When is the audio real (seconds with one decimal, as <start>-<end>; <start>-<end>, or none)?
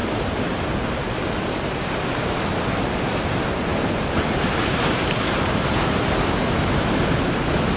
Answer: 1.9-3.7; 6.5-7.8